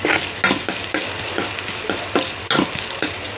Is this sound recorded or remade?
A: recorded